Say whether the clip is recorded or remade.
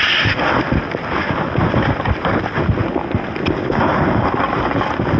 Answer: recorded